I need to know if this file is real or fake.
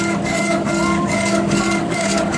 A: fake